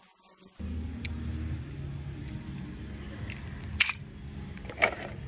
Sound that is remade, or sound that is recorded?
recorded